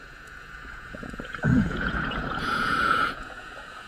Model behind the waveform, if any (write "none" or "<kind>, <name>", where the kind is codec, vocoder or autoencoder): vocoder, Vocos